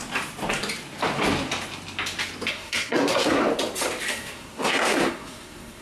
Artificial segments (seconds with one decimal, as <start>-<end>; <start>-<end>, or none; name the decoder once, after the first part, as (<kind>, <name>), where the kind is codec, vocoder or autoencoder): 2.5-3.4 (codec, SNAC); 4.1-5.8

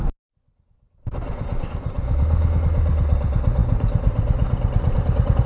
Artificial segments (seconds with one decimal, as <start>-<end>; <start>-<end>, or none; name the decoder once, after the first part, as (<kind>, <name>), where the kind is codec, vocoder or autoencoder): 2.0-2.6 (autoencoder, DAC-VAE)

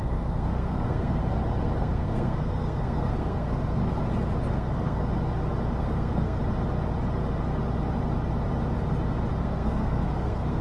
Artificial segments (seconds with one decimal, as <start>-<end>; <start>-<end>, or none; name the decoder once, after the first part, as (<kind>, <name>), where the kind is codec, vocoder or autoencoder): 0.0-1.2 (codec, SNAC); 1.8-3.8; 4.5-5.0; 5.8-6.4; 9.4-10.6

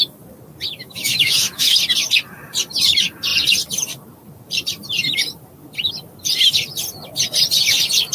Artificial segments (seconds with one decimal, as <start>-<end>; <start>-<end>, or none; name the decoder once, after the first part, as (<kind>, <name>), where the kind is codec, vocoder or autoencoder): 0.8-1.8 (autoencoder, DAC-VAE)